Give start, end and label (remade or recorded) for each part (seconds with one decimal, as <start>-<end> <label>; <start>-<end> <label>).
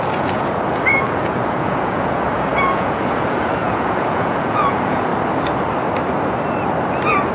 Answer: 0.0-5.1 remade; 5.1-7.3 recorded